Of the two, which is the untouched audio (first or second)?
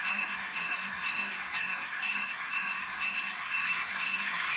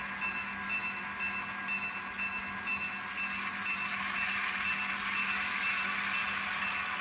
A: second